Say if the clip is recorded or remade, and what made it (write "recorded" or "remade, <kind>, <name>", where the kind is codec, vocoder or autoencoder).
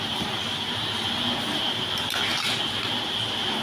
recorded